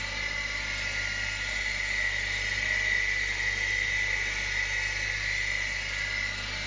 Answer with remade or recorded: recorded